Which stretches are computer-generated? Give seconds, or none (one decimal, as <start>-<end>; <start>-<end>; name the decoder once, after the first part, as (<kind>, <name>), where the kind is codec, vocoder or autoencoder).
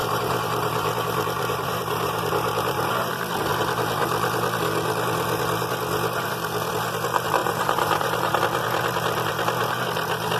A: 0.0-2.9 (vocoder, BigVGAN v2); 7.4-8.4